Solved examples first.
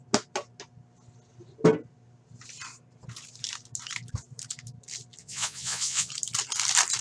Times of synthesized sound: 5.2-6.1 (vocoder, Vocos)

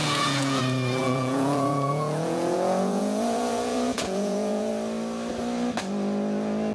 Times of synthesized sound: 0.0-0.6 (vocoder, Vocos); 1.0-4.7

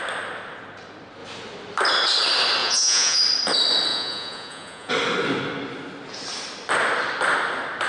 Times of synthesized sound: 2.6-3.2 (vocoder, Vocos); 3.9-4.9

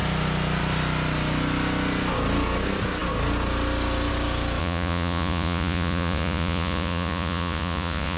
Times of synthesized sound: 4.6-8.2 (vocoder, Vocos)

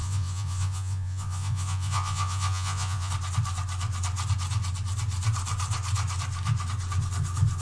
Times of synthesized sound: 0.0-3.1 (vocoder, Vocos)

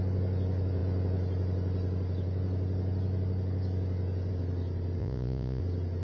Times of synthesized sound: 5.0-5.6 (vocoder, Vocos)

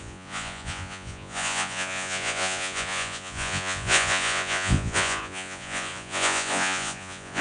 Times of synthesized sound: 0.0-7.4 (vocoder, Vocos)